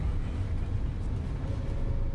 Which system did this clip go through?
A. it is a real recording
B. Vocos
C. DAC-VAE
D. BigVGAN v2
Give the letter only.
A